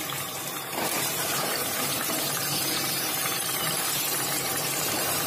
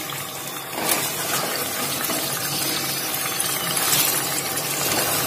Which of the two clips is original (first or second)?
second